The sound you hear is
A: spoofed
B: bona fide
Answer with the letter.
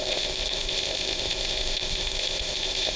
A